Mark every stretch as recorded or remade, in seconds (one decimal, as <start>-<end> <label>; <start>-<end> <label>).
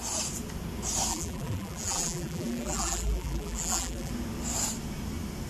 0.0-1.1 recorded; 1.1-4.1 remade; 4.1-5.5 recorded